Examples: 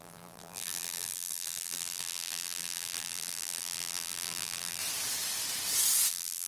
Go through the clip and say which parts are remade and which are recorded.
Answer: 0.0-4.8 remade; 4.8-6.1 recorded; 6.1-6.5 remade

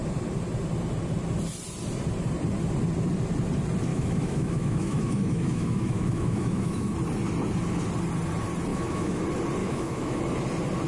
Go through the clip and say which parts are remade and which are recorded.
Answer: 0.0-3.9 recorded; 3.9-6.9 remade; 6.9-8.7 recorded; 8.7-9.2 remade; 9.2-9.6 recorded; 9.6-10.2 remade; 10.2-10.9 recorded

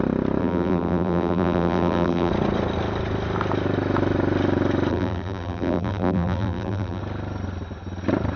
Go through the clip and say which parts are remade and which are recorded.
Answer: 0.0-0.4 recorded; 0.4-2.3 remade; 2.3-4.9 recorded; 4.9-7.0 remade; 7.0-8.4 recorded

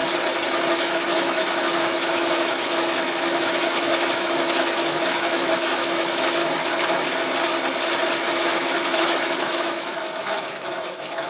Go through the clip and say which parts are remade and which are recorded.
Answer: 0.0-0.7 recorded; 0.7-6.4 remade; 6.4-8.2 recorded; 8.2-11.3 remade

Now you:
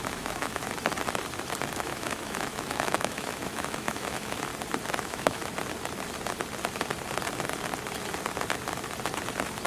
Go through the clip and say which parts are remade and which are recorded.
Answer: 0.0-0.6 remade; 0.6-1.8 recorded; 1.8-4.5 remade; 4.5-5.0 recorded; 5.0-5.4 remade; 5.4-9.7 recorded

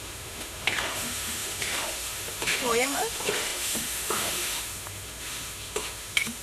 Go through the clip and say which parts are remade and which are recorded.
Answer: 0.0-6.4 remade

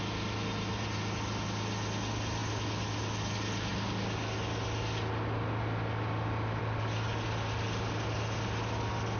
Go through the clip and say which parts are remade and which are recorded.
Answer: 0.0-9.2 recorded

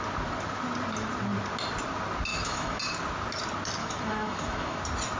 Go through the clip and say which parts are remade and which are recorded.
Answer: 0.0-2.3 recorded; 2.3-2.8 remade; 2.8-3.8 recorded; 3.8-4.8 remade; 4.8-5.2 recorded